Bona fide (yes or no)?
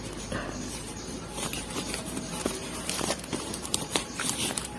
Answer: no